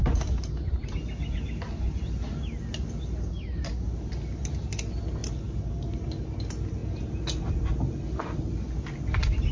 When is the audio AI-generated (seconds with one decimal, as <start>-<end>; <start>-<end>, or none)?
none